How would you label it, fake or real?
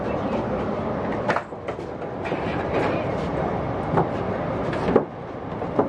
real